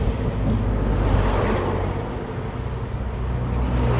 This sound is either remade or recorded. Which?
recorded